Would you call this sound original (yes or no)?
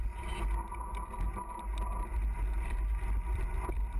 yes